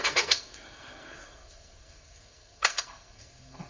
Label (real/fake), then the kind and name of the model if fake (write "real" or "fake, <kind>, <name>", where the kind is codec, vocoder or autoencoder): fake, codec, SNAC